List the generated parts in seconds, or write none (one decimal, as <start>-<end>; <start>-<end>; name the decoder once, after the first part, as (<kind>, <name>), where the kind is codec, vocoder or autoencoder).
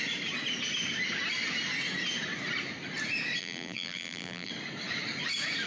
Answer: 3.4-4.5 (vocoder, BigVGAN v2)